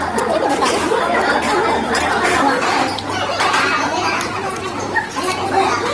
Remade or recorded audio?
recorded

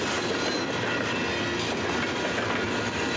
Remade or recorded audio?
recorded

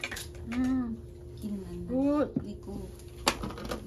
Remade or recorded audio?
recorded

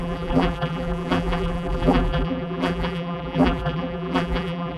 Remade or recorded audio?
remade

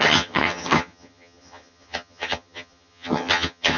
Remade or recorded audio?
remade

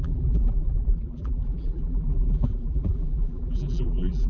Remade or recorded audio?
remade